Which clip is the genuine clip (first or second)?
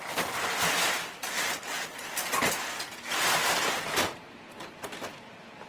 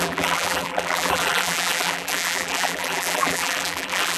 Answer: first